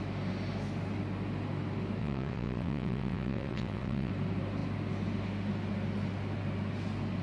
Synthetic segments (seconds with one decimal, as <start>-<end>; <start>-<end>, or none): 2.0-4.1